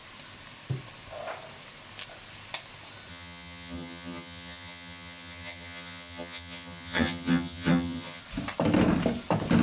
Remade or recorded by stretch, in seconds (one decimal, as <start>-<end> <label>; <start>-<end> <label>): 0.0-3.1 recorded; 3.1-8.2 remade; 8.2-9.6 recorded